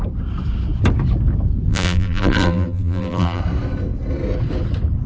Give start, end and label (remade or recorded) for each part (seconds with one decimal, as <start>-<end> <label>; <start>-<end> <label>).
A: 0.0-1.7 recorded; 1.7-3.4 remade; 3.4-5.1 recorded